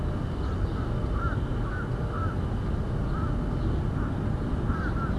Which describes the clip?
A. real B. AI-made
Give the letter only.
A